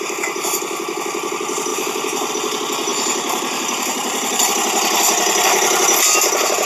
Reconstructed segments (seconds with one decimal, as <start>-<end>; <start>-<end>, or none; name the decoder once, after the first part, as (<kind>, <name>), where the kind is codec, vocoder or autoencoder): 1.7-2.3 (vocoder, BigVGAN v2); 2.9-4.5